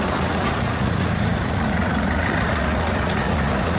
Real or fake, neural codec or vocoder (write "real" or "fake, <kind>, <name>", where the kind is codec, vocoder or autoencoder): fake, vocoder, Vocos